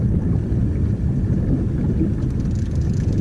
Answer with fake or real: real